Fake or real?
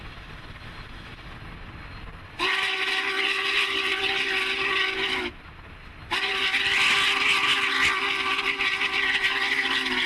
real